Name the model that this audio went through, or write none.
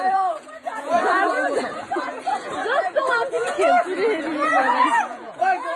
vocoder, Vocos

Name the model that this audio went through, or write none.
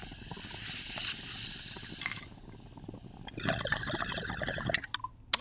none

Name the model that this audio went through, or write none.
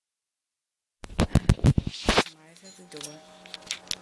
none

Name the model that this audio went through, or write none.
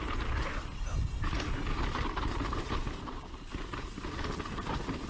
none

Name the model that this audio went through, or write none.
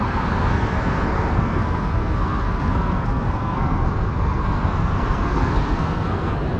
codec, SNAC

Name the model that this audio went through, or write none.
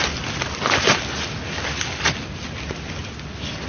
none